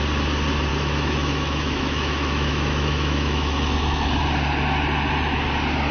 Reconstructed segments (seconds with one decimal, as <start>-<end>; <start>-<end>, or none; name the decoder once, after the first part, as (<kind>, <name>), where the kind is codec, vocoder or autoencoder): 0.7-4.2 (autoencoder, DAC-VAE)